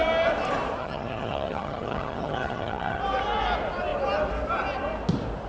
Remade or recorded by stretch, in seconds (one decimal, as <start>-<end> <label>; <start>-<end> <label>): 0.0-0.8 recorded; 0.8-3.0 remade; 3.0-5.5 recorded